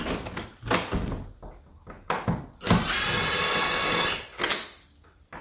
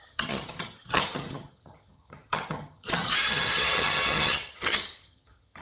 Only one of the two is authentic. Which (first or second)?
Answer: first